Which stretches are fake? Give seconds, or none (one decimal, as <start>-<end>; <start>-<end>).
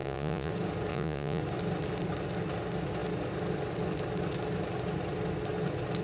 0.0-0.5; 0.9-1.4